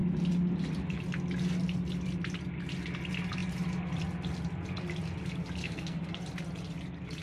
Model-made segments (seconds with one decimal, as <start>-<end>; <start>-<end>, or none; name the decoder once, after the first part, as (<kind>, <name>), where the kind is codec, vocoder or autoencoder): 5.6-6.2 (codec, SNAC)